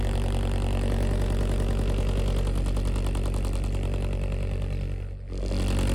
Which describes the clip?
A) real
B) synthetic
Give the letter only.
A